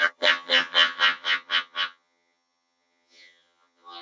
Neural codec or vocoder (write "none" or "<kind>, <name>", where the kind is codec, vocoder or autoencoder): vocoder, HiFi-GAN